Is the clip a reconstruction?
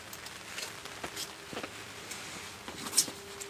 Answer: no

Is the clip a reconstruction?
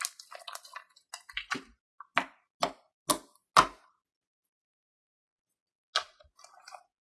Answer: no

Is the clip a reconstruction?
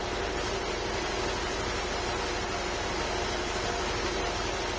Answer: no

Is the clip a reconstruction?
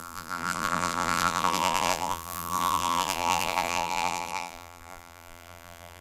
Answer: yes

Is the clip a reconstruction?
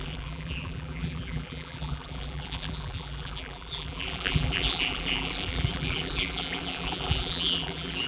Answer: yes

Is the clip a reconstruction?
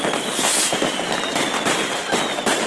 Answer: yes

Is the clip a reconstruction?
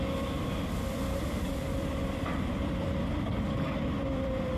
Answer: yes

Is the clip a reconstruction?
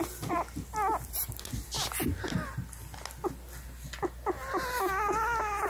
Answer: no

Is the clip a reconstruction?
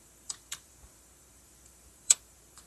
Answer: yes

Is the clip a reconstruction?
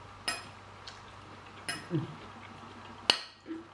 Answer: no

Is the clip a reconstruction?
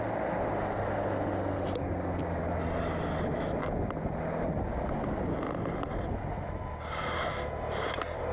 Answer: no